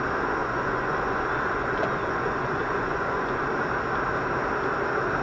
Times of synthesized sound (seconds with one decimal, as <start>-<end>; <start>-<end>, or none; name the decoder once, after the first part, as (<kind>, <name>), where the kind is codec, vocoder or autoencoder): 0.4-3.5 (vocoder, Vocos)